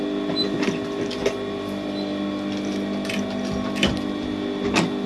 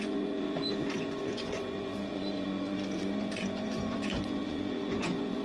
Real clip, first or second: first